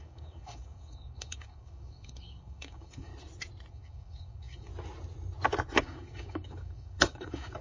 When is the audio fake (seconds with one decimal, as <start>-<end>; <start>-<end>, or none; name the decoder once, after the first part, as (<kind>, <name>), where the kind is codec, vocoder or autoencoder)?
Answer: 0.0-3.1 (codec, DAC); 3.7-4.7; 5.8-7.6